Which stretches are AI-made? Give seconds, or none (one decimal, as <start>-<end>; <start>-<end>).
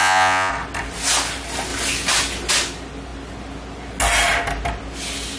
0.0-0.5